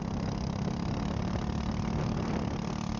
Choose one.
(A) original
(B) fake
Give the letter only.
A